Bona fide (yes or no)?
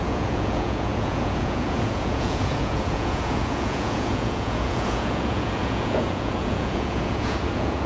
no